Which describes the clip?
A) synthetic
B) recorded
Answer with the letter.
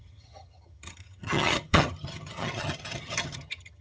A